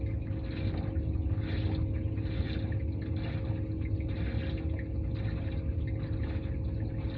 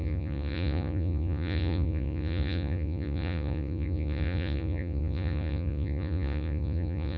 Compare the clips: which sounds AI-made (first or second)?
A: second